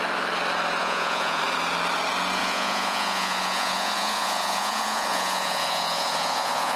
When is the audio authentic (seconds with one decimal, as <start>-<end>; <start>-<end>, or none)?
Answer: 0.0-0.8; 1.4-2.4